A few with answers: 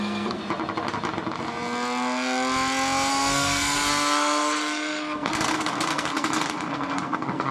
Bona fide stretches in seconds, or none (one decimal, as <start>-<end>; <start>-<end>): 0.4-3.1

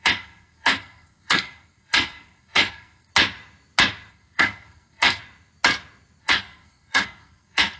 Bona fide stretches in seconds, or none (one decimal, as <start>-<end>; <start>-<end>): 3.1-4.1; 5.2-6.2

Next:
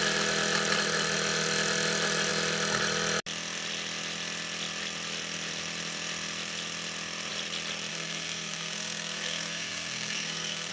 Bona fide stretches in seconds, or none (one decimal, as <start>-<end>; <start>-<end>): 0.0-7.9

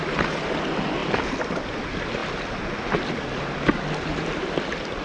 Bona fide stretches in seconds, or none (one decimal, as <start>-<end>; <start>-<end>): 0.0-1.0; 1.6-2.2; 3.1-5.0

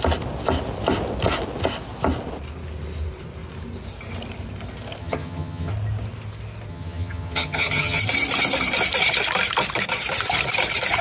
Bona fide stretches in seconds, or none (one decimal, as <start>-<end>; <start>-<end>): 0.0-5.0; 5.7-6.7; 8.0-11.0

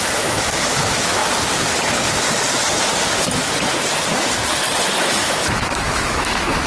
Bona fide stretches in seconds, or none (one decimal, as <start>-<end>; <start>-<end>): 1.2-5.2

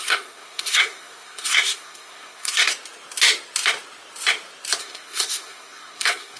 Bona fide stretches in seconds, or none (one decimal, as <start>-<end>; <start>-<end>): 2.7-4.8